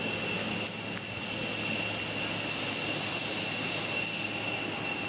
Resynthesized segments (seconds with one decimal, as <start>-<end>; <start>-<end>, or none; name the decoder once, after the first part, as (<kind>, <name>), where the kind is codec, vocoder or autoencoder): none